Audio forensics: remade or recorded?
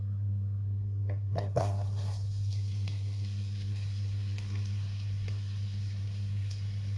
remade